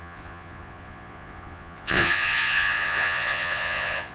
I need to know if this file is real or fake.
fake